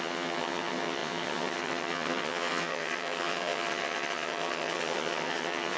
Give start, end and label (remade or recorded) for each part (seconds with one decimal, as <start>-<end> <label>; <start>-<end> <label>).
0.0-5.8 remade